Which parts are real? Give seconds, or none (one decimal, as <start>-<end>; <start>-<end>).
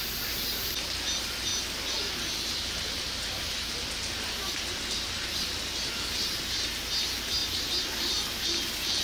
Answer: 0.0-9.0